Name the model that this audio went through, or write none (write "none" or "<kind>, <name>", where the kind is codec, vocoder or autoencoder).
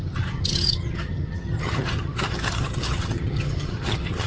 vocoder, HiFi-GAN